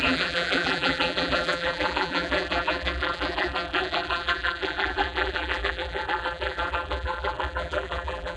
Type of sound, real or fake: fake